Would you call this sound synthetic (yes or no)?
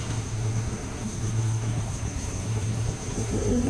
yes